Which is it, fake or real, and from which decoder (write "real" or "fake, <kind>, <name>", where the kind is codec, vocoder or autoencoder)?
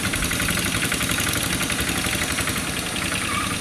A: real